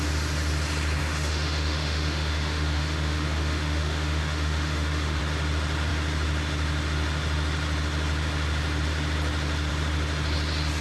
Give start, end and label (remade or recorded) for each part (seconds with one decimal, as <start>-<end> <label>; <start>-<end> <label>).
0.0-1.0 recorded; 1.0-5.2 remade; 5.2-10.8 recorded